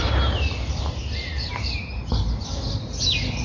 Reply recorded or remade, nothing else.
recorded